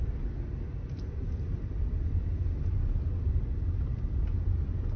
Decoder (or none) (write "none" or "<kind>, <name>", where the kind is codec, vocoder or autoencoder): none